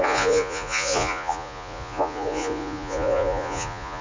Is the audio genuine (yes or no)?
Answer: no